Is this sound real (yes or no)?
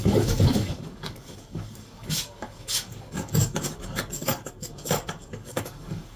no